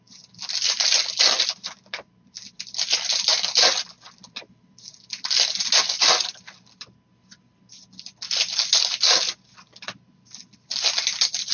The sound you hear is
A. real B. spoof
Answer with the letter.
A